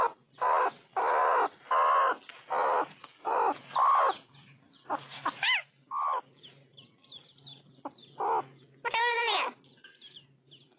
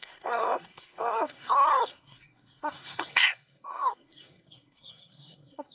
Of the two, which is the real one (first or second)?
first